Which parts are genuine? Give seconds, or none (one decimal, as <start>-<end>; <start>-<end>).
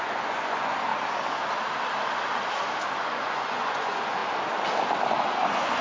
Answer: 0.9-2.9; 4.2-5.1